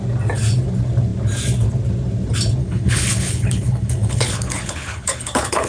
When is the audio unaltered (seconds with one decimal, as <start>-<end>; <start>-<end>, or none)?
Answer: 0.0-2.6